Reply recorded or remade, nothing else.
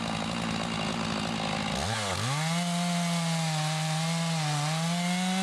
recorded